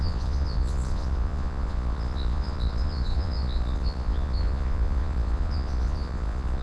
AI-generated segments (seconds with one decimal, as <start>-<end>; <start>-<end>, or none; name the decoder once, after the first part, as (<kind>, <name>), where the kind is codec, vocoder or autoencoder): 0.0-6.6 (vocoder, Vocos)